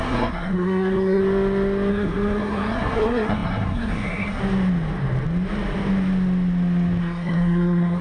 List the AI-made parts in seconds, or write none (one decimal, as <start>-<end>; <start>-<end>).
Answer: 0.0-1.2; 1.9-4.4; 7.0-8.0